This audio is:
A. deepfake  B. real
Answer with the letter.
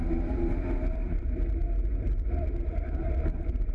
A